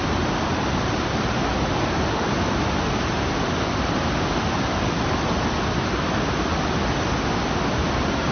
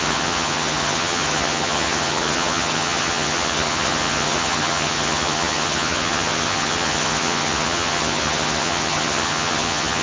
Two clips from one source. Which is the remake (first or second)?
second